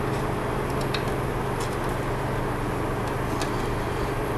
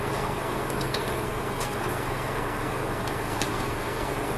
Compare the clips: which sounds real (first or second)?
first